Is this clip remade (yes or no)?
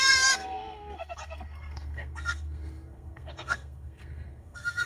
yes